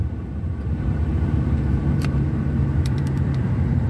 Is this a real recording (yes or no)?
no